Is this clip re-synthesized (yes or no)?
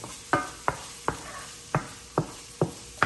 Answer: no